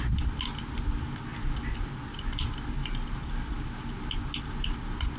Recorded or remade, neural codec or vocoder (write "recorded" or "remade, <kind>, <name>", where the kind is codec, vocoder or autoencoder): recorded